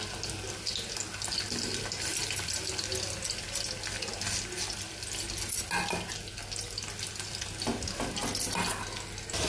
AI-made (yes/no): no